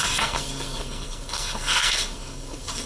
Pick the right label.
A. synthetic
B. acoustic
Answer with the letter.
A